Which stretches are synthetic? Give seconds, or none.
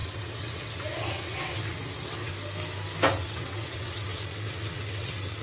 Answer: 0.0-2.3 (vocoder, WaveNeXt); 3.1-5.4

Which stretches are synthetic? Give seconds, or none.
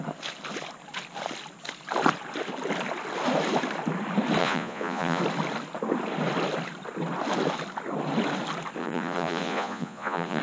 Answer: 4.4-5.2 (vocoder, Vocos); 8.8-10.4